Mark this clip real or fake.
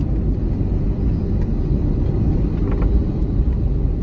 real